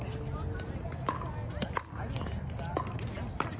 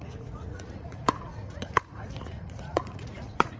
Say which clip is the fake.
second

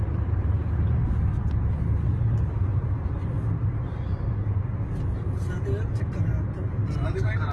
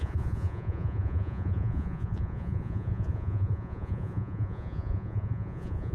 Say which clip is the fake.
second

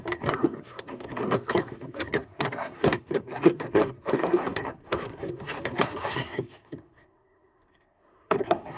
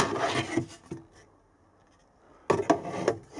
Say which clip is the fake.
first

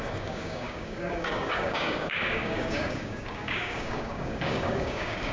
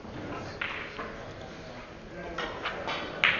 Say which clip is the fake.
first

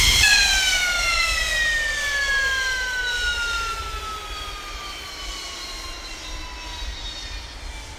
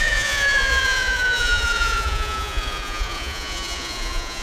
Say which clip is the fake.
second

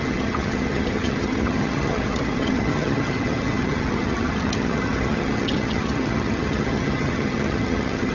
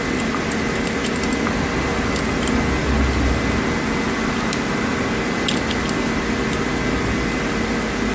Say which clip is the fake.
first